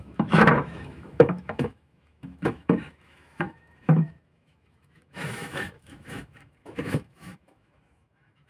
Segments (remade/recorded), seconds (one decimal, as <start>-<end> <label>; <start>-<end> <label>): 0.0-8.5 remade